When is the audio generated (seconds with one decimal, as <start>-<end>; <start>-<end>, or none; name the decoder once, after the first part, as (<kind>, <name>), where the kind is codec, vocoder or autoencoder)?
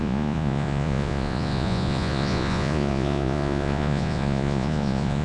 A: 0.0-5.2 (vocoder, Vocos)